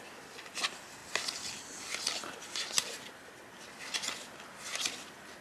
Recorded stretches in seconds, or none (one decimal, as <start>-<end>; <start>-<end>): 0.0-5.4